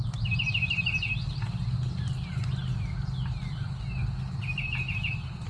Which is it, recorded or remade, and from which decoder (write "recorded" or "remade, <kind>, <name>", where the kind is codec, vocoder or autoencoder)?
recorded